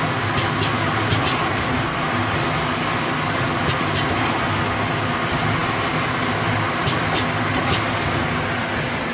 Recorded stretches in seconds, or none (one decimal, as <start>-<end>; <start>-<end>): 0.0-9.1